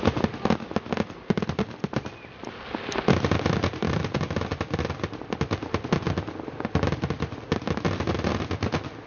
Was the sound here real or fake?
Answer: real